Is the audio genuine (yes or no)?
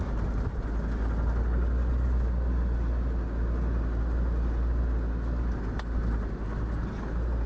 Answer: yes